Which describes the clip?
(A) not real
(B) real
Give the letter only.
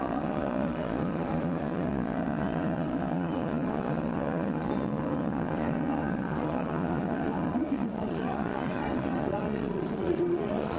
A